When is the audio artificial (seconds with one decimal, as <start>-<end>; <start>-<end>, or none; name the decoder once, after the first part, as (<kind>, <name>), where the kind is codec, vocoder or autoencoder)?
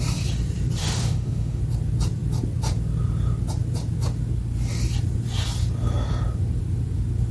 0.8-1.6 (autoencoder, DAC-VAE)